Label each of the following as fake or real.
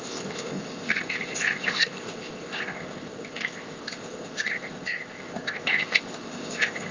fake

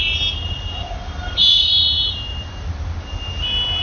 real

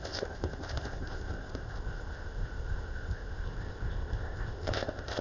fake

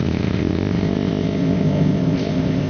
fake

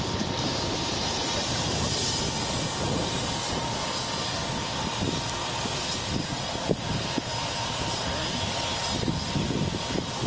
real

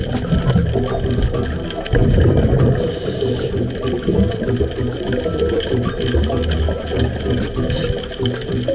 real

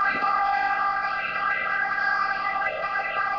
fake